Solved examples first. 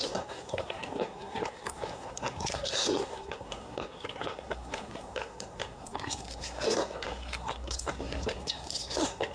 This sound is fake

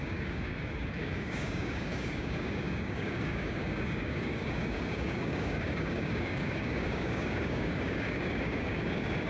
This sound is fake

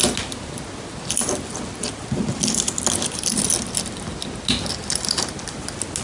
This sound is real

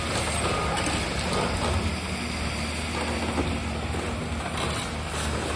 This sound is real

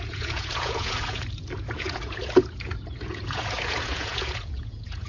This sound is fake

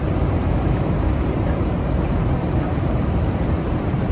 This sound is fake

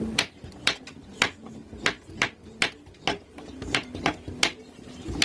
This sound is real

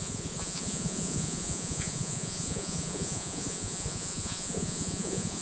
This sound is fake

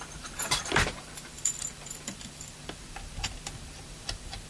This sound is fake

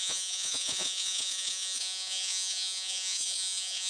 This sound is fake